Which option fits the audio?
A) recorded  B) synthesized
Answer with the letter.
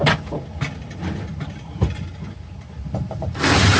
A